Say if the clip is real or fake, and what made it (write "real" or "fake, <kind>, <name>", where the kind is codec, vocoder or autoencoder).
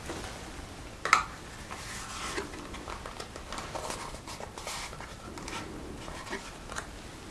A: real